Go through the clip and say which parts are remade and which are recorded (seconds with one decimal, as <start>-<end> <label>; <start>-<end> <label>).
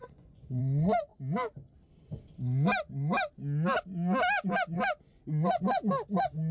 0.0-0.6 remade; 0.6-6.5 recorded